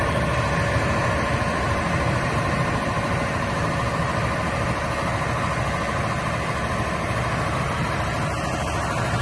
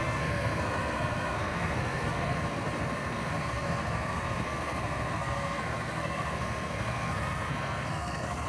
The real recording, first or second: first